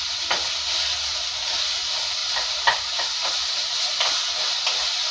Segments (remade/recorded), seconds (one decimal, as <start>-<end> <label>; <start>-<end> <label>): 0.0-2.2 recorded; 2.2-4.6 remade; 4.6-5.1 recorded